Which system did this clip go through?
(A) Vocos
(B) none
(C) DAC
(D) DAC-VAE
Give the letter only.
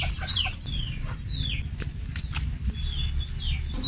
B